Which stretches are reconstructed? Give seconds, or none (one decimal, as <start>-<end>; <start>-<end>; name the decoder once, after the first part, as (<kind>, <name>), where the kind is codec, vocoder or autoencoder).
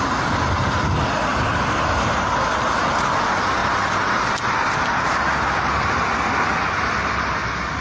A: none